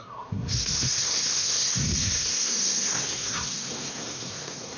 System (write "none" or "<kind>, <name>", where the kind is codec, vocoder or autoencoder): codec, SNAC